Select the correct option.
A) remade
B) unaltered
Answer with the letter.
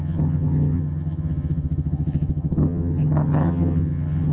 A